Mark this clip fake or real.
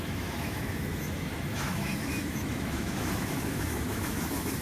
fake